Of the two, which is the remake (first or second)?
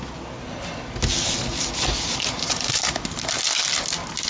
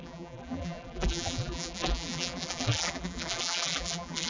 second